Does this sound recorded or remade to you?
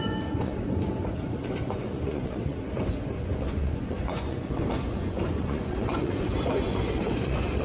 remade